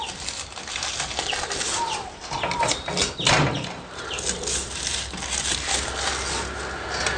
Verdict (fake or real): real